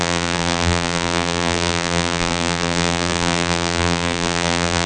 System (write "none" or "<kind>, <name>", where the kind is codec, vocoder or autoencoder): vocoder, BigVGAN v2